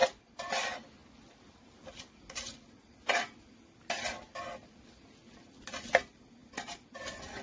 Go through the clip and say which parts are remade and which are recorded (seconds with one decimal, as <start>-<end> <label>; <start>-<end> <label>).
0.0-7.4 recorded